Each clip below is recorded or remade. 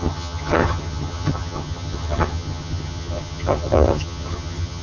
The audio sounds remade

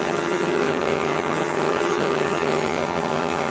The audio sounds remade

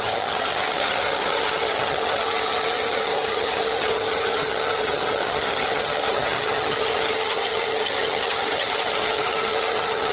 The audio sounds remade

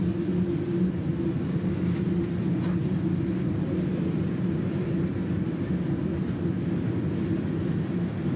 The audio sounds recorded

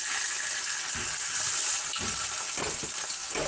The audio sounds recorded